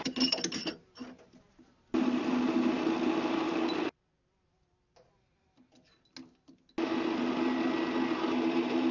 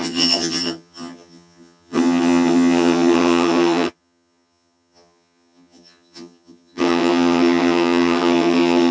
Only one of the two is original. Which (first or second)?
first